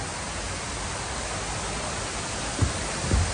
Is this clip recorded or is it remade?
recorded